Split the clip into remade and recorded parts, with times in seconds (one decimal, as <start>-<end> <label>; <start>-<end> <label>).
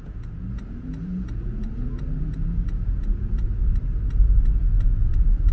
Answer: 0.0-3.7 remade; 3.7-5.0 recorded; 5.0-5.5 remade